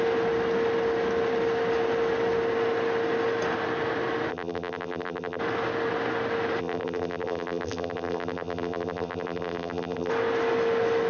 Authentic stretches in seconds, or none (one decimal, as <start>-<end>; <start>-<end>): 0.0-4.3; 5.4-6.6; 10.1-11.1